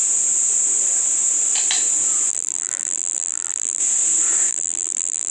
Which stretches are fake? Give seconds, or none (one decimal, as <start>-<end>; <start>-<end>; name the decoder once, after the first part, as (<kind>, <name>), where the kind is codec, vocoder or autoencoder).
2.3-3.8 (vocoder, BigVGAN v2); 4.5-5.3